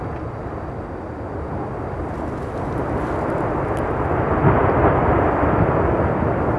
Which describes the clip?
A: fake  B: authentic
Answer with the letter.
B